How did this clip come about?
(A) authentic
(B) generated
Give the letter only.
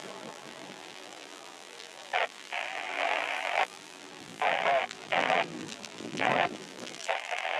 B